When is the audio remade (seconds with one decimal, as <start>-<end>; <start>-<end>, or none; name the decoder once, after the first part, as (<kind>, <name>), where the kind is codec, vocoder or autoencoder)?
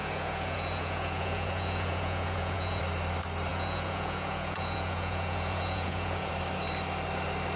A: 0.0-2.8 (vocoder, Vocos); 3.5-6.3